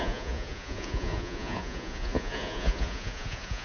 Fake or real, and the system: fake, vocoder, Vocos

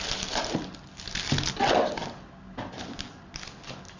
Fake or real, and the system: real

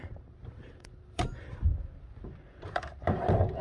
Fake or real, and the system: fake, vocoder, BigVGAN v2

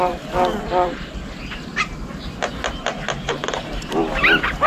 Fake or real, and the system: real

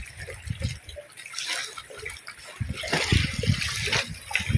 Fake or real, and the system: real